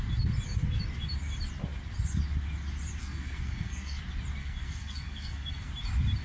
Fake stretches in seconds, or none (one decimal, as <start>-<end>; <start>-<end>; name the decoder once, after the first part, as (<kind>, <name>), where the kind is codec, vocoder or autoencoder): 3.0-4.0 (codec, SNAC); 4.4-5.7